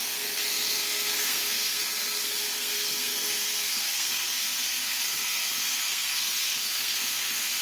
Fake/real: fake